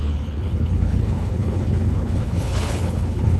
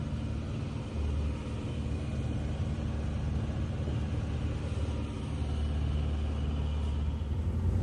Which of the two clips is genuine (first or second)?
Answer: second